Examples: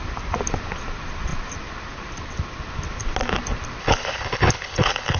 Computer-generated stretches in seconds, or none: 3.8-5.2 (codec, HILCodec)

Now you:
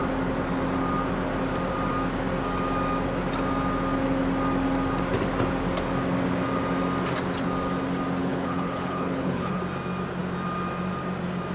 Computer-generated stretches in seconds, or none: 8.2-9.6 (codec, HILCodec)

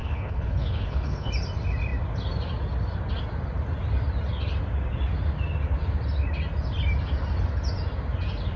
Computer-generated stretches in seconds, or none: 0.0-1.3 (codec, HILCodec)